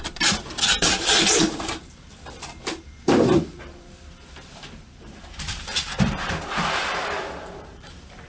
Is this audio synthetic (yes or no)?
yes